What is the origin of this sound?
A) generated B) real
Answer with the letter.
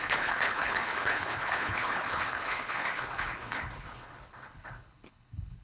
A